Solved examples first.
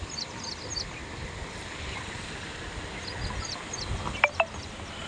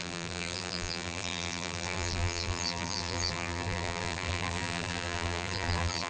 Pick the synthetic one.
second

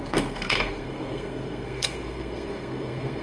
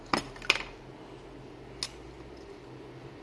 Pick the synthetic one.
first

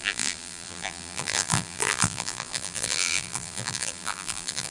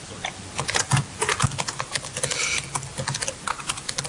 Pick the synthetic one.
first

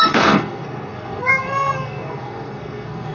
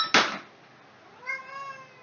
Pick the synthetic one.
first